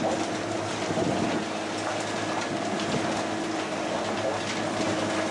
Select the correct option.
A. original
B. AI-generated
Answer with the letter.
A